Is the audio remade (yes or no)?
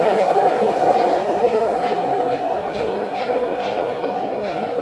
yes